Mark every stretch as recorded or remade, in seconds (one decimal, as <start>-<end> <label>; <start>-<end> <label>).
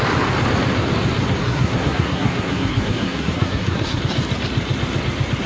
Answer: 0.0-1.4 recorded; 1.4-4.0 remade; 4.0-5.5 recorded